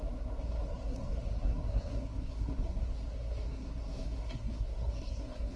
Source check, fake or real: fake